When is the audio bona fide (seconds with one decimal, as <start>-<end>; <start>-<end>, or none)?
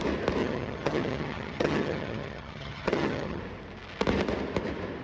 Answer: 0.0-0.4; 3.4-5.0